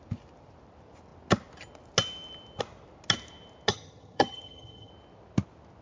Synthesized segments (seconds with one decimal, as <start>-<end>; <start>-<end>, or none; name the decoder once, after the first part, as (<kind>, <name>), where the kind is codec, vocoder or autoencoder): 3.7-4.9 (vocoder, HiFi-GAN)